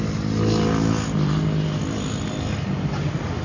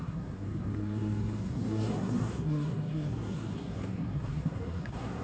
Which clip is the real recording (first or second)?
first